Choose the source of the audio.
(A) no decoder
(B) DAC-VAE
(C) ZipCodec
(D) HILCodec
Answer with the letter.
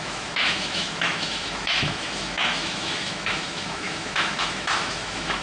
B